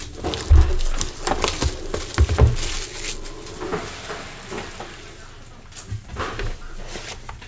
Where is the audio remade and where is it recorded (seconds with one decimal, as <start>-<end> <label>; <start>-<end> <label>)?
0.0-7.5 recorded